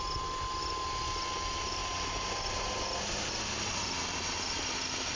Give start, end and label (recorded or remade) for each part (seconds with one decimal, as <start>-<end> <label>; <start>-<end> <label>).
0.0-5.2 recorded